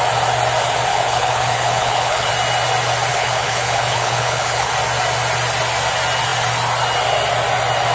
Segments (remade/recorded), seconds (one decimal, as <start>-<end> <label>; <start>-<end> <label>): 0.0-0.9 recorded; 0.9-2.3 remade; 2.3-3.1 recorded; 3.1-4.7 remade; 4.7-7.9 recorded